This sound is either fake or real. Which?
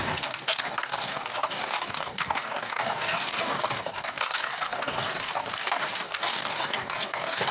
fake